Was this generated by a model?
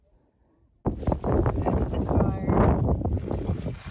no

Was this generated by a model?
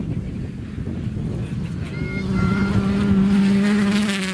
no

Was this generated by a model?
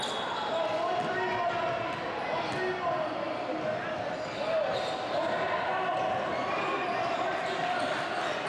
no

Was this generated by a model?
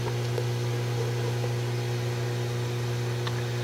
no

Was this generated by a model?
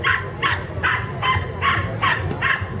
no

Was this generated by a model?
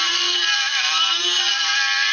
no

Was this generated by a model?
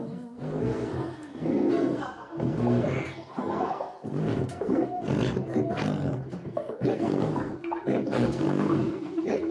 yes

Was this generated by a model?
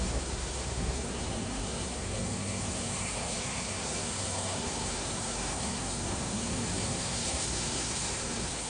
yes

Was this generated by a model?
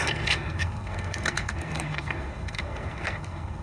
yes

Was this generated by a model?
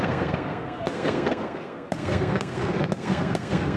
yes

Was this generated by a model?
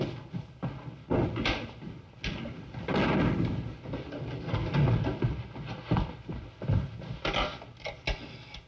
no